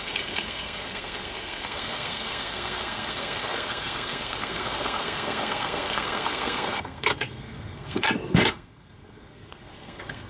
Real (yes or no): no